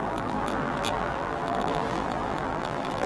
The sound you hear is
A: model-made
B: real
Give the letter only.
A